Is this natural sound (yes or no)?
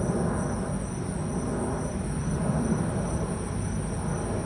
yes